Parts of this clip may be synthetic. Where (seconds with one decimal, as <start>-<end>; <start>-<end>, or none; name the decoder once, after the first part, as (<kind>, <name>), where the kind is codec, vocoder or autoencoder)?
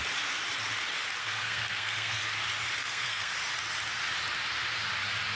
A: 1.2-2.2 (codec, SNAC); 2.8-3.3